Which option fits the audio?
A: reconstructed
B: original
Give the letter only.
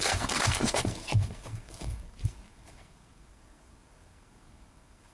A